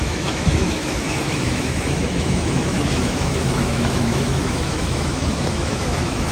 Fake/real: fake